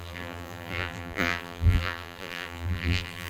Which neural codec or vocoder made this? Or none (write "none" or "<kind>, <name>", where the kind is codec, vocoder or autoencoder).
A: vocoder, BigVGAN v2